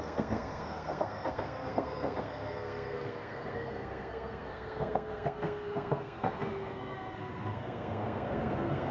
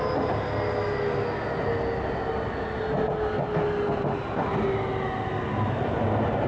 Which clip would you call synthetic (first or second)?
first